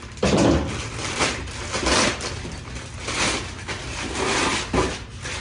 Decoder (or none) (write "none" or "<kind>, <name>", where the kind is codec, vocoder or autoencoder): none